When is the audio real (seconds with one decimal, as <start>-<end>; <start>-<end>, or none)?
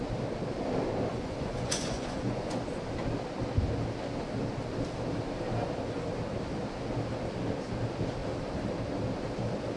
0.0-1.1; 2.6-9.8